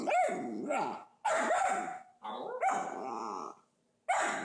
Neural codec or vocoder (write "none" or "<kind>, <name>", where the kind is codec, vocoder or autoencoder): none